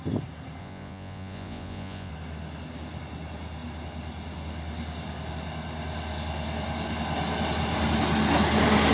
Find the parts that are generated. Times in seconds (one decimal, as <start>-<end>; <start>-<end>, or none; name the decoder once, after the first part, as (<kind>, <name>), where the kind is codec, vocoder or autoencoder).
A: 0.6-2.1 (vocoder, Vocos)